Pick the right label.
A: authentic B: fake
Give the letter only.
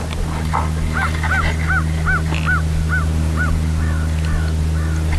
A